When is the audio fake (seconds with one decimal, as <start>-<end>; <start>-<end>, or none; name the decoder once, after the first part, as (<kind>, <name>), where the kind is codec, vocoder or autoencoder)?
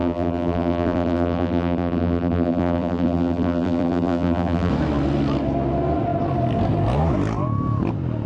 0.0-4.7 (vocoder, BigVGAN v2)